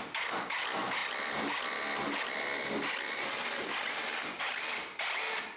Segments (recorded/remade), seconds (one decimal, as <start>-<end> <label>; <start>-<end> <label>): 0.0-5.6 recorded